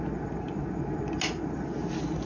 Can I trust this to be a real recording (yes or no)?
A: yes